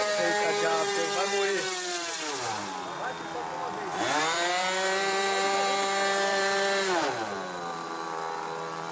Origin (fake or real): fake